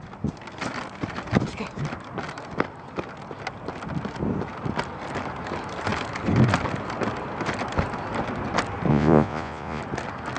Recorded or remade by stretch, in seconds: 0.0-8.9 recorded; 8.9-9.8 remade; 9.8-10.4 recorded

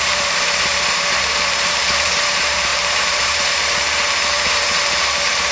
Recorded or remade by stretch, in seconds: 0.0-5.5 remade

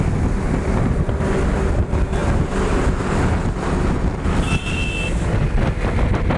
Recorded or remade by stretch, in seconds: 0.0-6.4 recorded

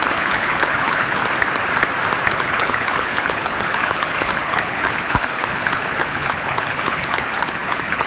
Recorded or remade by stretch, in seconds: 0.0-1.2 remade; 1.2-2.3 recorded; 2.3-8.1 remade